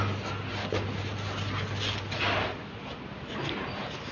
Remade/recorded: recorded